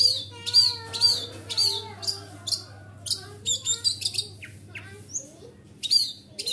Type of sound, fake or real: real